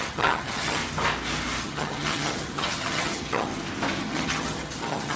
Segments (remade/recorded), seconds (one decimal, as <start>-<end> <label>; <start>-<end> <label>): 0.0-0.8 remade; 0.8-1.6 recorded; 1.6-3.5 remade; 3.5-4.0 recorded; 4.0-5.2 remade